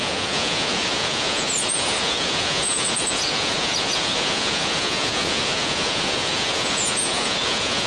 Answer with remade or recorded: remade